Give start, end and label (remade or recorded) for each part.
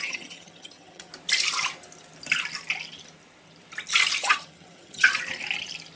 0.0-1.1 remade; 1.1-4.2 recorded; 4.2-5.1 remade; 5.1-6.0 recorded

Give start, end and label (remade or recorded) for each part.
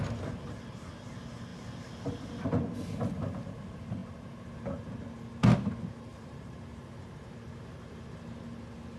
0.0-6.1 recorded; 6.1-6.8 remade; 6.8-9.0 recorded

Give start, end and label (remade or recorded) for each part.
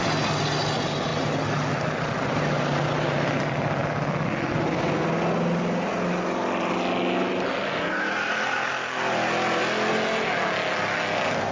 0.0-11.5 recorded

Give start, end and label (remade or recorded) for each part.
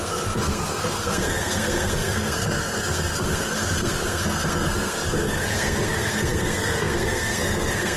0.0-8.0 remade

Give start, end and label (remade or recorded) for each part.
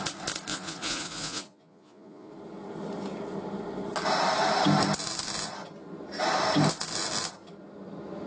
0.0-0.5 recorded; 0.5-2.3 remade; 2.3-8.3 recorded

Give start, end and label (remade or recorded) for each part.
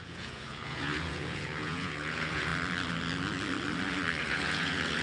0.0-2.5 remade; 2.5-4.2 recorded; 4.2-5.0 remade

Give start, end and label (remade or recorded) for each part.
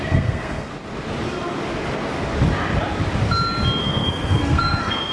0.0-0.7 remade; 0.7-3.8 recorded; 3.8-5.1 remade